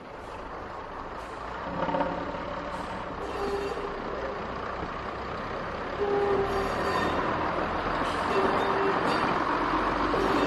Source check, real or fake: real